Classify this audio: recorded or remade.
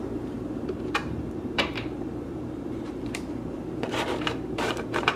remade